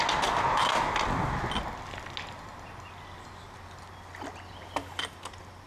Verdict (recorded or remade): recorded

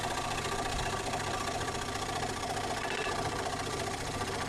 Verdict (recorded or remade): remade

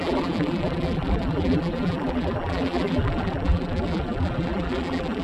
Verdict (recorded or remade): remade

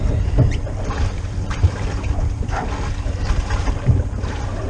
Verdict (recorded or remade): remade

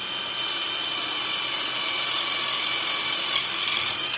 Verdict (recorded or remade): recorded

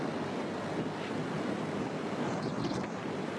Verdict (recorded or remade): remade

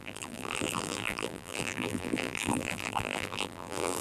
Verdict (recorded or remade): remade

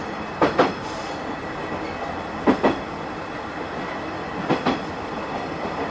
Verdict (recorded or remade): remade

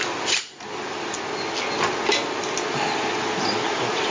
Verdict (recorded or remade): recorded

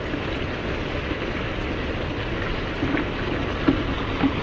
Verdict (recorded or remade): recorded